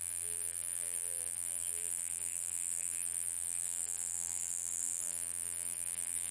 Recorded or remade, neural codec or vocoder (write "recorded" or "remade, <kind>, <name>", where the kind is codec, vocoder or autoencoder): remade, vocoder, BigVGAN v2